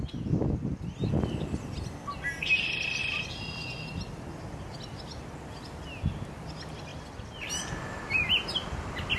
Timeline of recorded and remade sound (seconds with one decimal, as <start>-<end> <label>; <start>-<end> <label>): 0.0-9.2 recorded